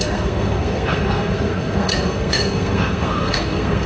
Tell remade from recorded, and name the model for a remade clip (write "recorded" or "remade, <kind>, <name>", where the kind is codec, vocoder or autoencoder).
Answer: remade, codec, SNAC